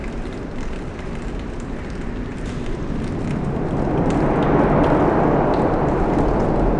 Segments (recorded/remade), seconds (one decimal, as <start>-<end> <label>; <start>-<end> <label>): 0.0-1.3 remade; 1.3-6.8 recorded